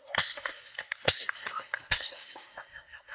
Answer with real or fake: fake